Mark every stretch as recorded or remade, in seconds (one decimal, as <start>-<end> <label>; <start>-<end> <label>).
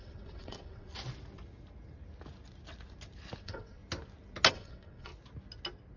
0.0-0.9 remade; 0.9-3.4 recorded; 3.4-3.8 remade; 3.8-4.5 recorded; 4.5-5.1 remade; 5.1-6.0 recorded